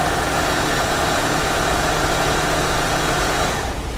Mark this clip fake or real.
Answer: fake